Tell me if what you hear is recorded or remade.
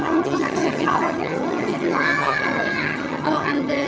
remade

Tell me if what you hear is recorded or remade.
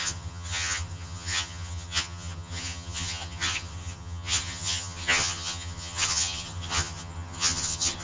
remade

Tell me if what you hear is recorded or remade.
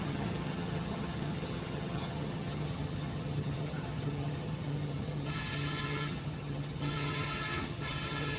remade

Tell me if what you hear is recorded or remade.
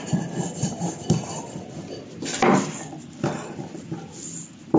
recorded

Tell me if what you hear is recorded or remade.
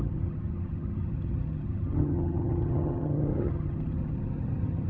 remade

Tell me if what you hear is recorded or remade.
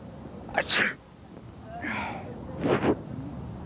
recorded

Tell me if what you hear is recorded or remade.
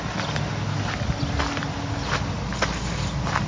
recorded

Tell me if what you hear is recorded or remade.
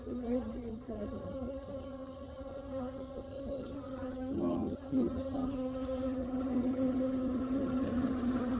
remade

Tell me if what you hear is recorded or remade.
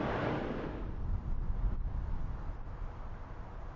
recorded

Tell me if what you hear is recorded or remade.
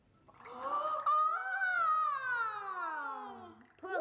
recorded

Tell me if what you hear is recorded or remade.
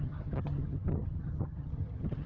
remade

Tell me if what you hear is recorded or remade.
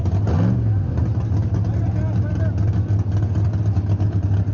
recorded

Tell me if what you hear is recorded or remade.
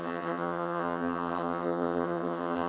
remade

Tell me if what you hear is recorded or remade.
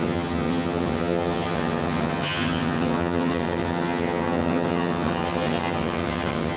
remade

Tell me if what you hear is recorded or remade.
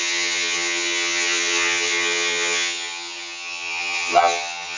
remade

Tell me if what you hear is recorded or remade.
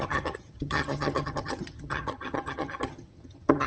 remade